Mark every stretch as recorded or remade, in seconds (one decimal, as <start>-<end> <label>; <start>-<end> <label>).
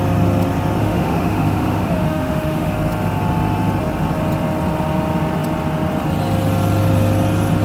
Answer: 0.0-0.8 recorded; 0.8-2.7 remade; 2.7-7.6 recorded